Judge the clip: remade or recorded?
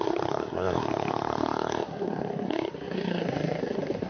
remade